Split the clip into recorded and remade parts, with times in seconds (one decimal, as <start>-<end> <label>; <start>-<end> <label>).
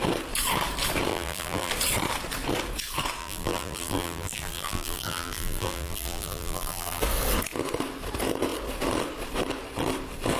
0.0-1.1 recorded; 1.1-1.7 remade; 1.7-3.2 recorded; 3.2-7.0 remade; 7.0-10.4 recorded